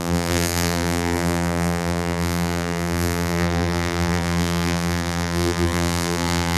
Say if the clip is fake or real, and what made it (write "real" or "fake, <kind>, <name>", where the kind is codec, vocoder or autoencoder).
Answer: fake, vocoder, BigVGAN v2